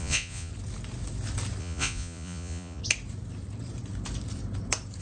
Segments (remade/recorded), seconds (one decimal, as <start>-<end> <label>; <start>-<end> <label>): 0.0-0.5 remade; 0.5-1.6 recorded; 1.6-2.8 remade; 2.8-5.0 recorded